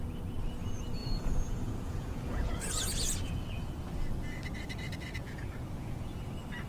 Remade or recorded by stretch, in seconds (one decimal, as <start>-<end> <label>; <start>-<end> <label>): 0.0-1.0 recorded; 1.0-3.6 remade; 3.6-5.2 recorded; 5.2-6.2 remade; 6.2-6.7 recorded